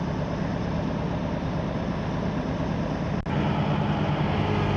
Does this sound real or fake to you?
real